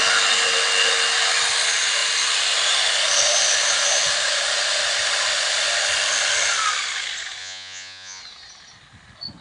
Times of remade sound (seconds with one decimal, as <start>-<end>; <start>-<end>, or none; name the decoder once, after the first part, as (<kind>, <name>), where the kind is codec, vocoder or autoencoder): 7.4-8.2 (vocoder, Vocos)